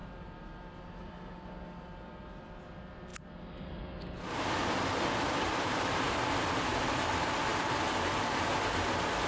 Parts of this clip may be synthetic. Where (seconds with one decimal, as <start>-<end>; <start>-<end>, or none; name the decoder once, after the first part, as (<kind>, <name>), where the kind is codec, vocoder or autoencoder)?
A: 0.0-1.5 (vocoder, BigVGAN v2); 7.5-8.4